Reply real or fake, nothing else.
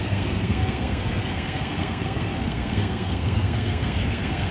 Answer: fake